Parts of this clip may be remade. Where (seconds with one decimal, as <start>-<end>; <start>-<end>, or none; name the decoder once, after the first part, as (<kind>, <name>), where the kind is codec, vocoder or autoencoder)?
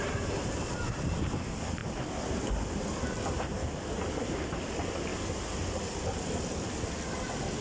none